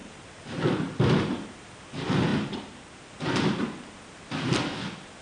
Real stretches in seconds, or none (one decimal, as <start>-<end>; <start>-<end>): 0.0-5.2